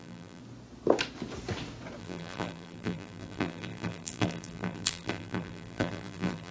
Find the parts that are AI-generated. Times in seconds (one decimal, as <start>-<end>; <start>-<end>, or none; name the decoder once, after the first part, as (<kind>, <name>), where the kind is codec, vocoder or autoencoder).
0.0-0.4 (vocoder, BigVGAN v2); 2.0-6.5